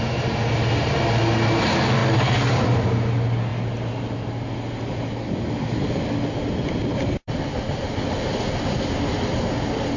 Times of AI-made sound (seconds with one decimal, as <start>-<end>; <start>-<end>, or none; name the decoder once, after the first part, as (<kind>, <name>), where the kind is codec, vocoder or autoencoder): none